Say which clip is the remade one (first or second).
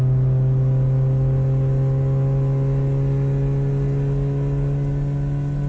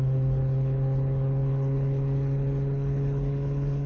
second